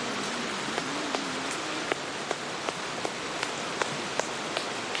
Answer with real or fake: real